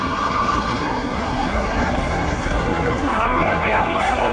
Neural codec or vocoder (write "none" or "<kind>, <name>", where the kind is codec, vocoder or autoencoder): codec, SNAC